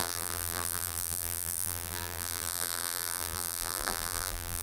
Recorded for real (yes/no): no